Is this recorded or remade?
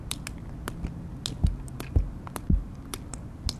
recorded